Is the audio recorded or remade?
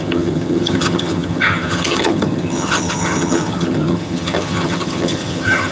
remade